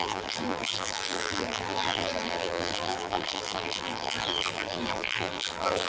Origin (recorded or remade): remade